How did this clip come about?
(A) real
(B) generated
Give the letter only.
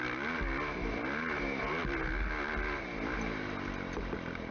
A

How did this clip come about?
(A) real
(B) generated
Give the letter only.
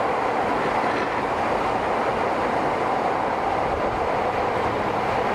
A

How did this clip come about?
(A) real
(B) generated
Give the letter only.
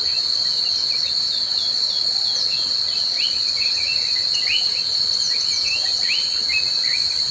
A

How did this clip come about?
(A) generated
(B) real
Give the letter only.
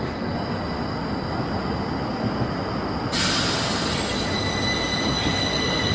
B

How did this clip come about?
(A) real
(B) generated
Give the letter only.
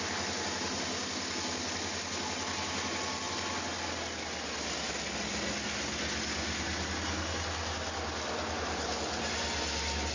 A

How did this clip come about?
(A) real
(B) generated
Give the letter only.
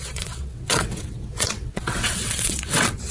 B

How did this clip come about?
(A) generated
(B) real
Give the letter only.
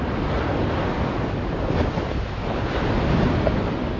B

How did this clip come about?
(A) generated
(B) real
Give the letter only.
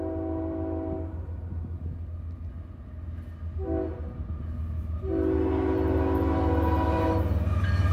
B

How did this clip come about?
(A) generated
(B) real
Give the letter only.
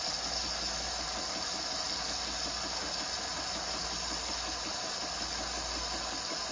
B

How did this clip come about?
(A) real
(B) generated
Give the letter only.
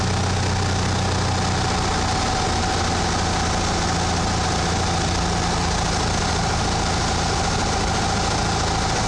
A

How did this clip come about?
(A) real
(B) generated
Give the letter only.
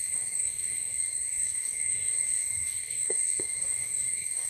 B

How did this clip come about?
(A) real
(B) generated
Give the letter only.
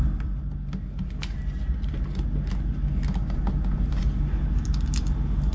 A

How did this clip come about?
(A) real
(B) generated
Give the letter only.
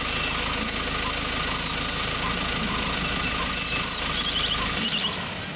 A